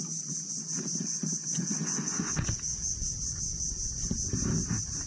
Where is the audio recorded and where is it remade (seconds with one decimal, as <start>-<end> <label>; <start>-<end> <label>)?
0.0-1.4 recorded; 1.4-2.3 remade; 2.3-5.1 recorded